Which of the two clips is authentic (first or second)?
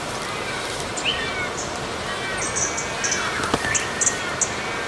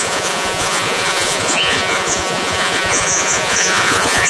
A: first